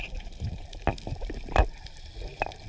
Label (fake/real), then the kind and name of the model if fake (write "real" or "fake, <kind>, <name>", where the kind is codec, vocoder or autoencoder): real